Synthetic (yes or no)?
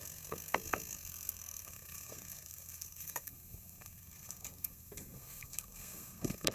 yes